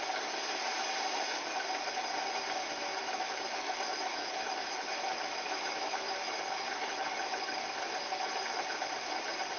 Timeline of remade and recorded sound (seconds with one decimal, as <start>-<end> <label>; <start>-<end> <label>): 0.0-2.9 recorded; 2.9-7.9 remade; 7.9-9.6 recorded